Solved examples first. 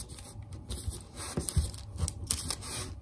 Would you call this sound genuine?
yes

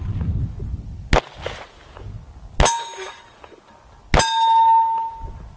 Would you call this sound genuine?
yes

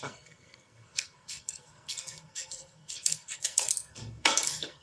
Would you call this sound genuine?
no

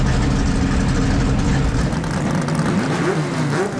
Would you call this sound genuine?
yes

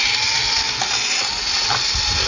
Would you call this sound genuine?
yes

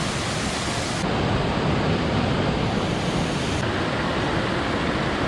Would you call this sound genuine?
yes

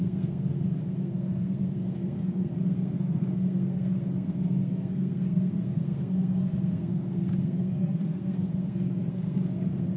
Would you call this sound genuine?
no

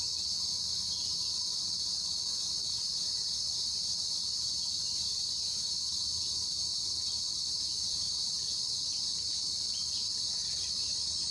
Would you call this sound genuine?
yes